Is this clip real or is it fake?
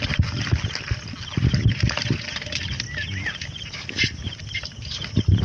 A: real